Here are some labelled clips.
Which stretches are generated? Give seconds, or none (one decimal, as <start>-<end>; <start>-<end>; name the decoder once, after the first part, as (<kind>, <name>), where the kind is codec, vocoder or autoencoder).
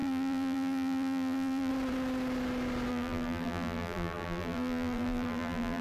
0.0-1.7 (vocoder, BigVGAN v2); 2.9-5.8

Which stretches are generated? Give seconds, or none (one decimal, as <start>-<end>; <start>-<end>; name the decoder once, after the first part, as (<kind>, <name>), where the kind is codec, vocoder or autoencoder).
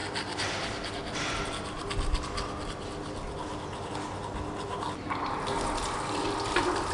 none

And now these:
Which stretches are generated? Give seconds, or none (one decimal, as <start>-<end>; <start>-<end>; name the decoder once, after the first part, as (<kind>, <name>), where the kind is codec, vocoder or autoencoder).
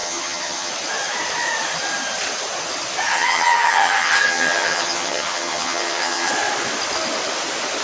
0.0-0.7 (vocoder, HiFi-GAN); 3.1-6.3